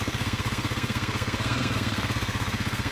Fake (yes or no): yes